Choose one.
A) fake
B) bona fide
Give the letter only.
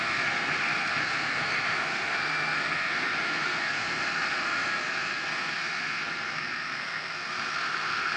A